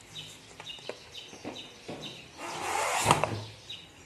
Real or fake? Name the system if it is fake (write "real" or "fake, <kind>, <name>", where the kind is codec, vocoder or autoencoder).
real